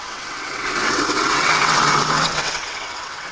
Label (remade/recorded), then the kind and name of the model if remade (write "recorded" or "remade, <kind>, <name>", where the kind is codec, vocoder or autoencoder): remade, vocoder, WaveNeXt